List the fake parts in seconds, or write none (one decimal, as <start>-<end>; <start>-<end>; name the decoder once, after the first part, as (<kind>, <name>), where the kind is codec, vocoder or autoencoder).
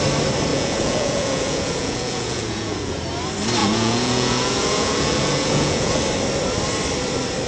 0.5-3.0 (vocoder, Vocos); 3.6-6.0